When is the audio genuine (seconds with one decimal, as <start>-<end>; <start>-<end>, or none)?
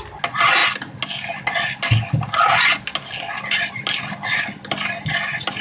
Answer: 0.0-5.6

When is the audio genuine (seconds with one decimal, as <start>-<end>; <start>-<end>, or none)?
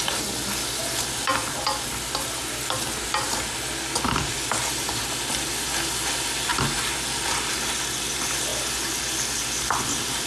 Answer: 0.0-10.3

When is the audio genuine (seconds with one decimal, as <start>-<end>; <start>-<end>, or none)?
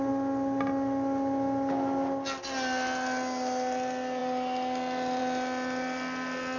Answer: 0.0-6.6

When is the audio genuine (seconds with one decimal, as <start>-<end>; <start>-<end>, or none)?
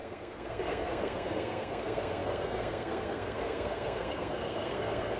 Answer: none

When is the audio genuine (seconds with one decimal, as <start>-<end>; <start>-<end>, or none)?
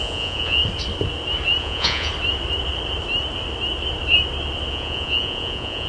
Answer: 0.6-1.6; 2.1-4.7